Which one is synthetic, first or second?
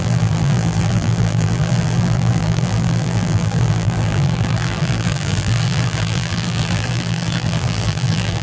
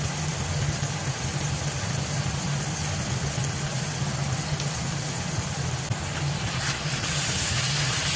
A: first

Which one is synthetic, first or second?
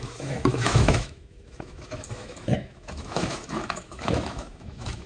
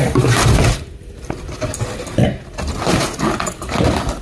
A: first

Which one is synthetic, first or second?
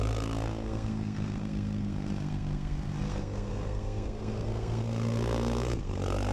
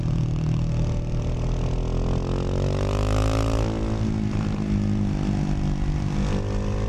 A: first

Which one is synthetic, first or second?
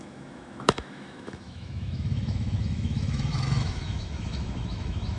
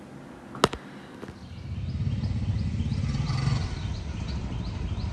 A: first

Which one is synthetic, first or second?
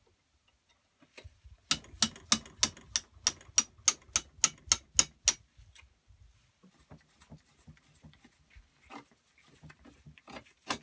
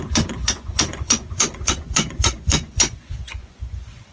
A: second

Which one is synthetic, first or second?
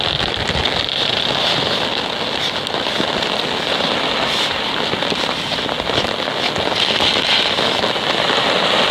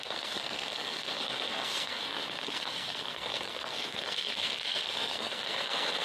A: second